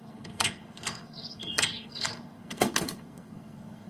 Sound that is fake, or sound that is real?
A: fake